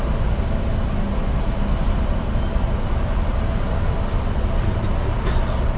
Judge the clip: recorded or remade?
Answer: recorded